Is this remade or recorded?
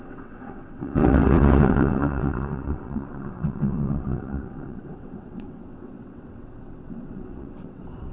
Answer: remade